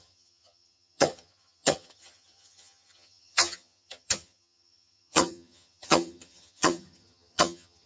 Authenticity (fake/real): fake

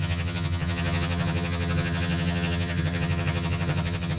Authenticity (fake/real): fake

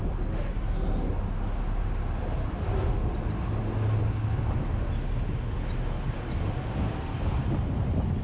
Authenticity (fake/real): real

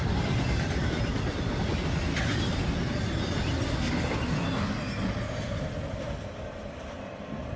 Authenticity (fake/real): real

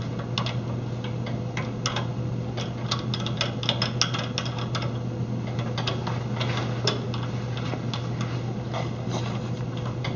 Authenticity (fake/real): real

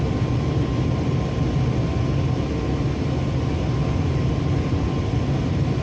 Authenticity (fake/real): real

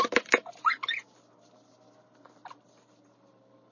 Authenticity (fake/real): real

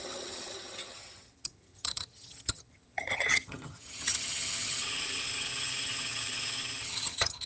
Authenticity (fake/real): fake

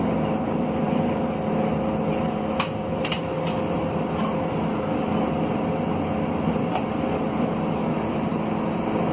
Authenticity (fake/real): real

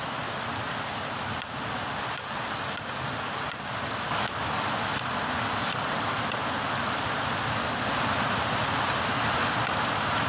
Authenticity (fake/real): real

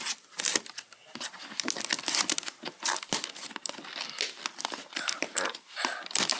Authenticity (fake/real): real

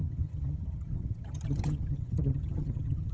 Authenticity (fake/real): fake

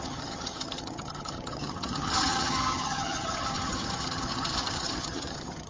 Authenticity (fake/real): fake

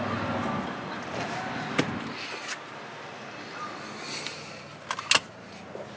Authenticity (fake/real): real